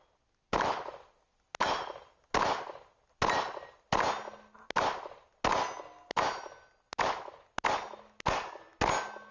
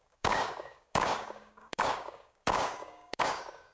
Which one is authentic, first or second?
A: first